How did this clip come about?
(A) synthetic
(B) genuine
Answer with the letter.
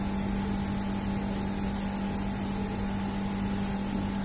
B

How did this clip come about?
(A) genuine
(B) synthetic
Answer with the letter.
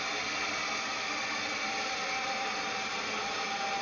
A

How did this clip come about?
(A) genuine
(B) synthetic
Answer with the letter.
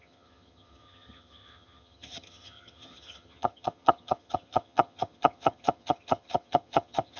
B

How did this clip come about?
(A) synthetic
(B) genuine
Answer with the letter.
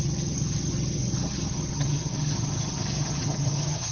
A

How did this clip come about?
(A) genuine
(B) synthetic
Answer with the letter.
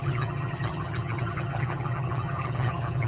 B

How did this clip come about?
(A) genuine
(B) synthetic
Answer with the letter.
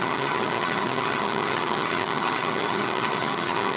B